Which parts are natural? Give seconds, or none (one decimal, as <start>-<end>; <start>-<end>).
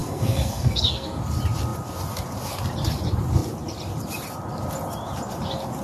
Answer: 1.2-5.8